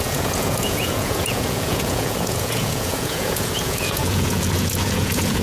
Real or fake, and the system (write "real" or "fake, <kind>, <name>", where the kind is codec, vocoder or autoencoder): fake, vocoder, Vocos